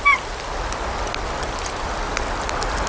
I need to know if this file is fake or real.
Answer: real